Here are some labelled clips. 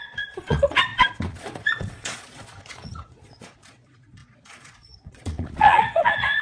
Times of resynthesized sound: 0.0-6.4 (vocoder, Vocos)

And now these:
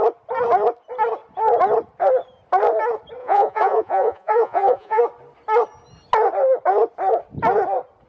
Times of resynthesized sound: 3.2-5.0 (vocoder, Vocos)

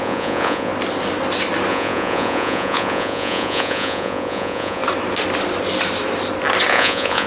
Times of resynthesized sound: 0.0-0.7 (vocoder, Vocos); 1.7-4.8; 6.7-7.3

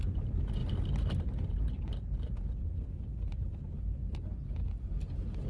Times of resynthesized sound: none